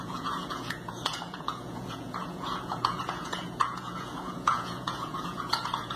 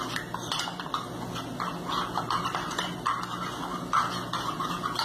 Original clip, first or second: second